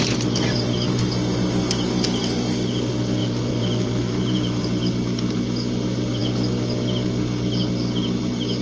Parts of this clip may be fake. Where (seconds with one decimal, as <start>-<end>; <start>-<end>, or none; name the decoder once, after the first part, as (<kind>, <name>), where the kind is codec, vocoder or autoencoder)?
3.2-4.9 (vocoder, BigVGAN v2)